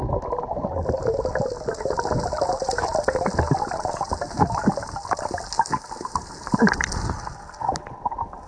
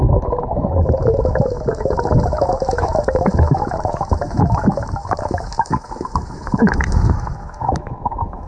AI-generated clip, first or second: second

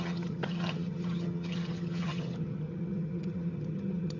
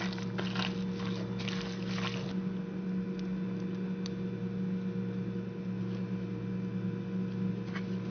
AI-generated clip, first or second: first